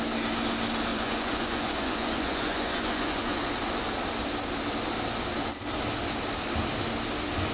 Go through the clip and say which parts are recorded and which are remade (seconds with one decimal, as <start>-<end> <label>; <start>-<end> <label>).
0.0-0.9 recorded; 0.9-3.4 remade; 3.4-7.5 recorded